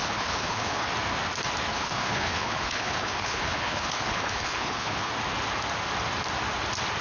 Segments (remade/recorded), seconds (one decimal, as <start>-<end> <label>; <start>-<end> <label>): 0.0-0.9 remade; 0.9-1.7 recorded; 1.7-5.1 remade; 5.1-7.0 recorded